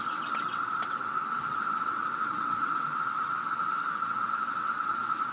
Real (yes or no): no